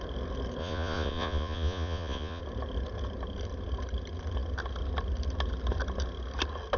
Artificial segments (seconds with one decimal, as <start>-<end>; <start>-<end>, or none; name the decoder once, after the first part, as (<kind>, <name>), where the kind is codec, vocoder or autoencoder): 0.6-2.4 (vocoder, Vocos)